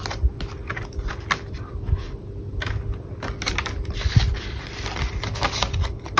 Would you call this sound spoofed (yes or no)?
no